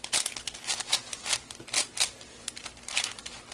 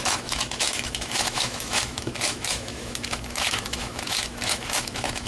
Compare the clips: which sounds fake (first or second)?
second